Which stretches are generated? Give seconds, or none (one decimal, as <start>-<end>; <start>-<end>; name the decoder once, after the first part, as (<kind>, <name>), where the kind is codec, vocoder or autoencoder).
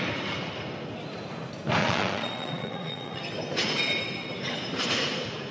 1.8-3.2 (vocoder, Vocos)